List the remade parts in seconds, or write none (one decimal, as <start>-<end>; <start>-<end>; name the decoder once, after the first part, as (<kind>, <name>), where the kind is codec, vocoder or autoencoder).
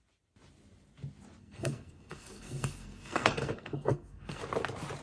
1.4-4.4 (codec, SNAC)